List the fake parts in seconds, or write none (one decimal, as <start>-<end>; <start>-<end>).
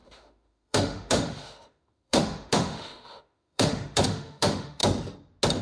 0.0-4.8